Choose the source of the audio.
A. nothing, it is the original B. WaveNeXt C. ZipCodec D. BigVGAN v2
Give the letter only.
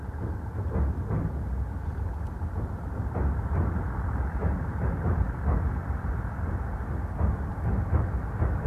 A